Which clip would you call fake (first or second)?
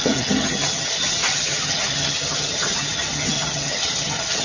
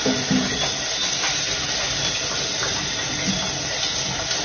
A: first